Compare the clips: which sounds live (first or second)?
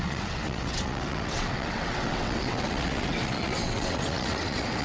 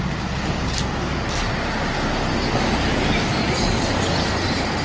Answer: second